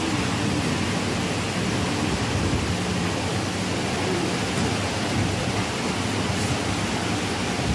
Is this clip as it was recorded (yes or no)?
yes